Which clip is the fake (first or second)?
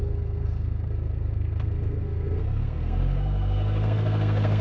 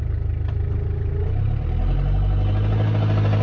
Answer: first